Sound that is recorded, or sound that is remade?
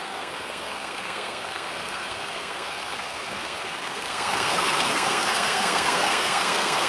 remade